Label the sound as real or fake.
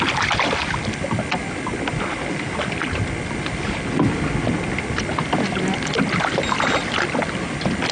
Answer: real